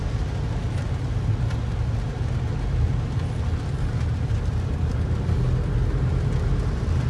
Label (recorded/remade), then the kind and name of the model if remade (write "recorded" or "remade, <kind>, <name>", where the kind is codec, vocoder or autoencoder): recorded